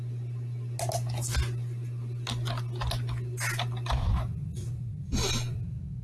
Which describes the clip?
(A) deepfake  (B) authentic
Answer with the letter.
B